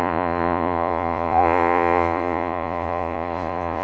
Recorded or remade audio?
remade